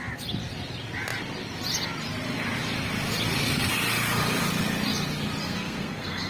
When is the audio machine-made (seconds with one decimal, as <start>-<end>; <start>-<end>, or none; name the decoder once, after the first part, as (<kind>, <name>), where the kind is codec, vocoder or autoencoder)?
5.4-6.3 (codec, SNAC)

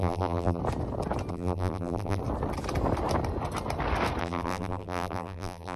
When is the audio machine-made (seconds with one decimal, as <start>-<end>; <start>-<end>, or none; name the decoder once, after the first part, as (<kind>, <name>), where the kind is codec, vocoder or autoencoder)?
0.0-0.6 (vocoder, BigVGAN v2); 1.3-2.2; 4.2-5.8

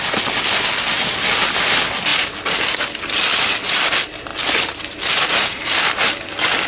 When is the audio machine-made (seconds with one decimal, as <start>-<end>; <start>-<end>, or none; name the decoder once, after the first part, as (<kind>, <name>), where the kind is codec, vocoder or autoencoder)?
none